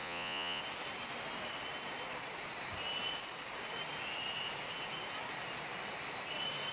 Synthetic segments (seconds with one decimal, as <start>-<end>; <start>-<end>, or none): 0.0-0.6